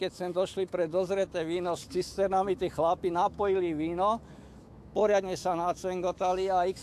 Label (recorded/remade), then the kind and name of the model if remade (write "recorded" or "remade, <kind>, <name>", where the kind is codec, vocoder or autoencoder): remade, autoencoder, DAC-VAE